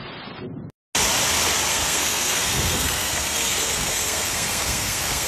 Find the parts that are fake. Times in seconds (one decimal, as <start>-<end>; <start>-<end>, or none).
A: 1.7-5.3